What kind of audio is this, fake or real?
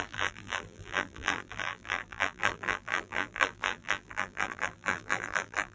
fake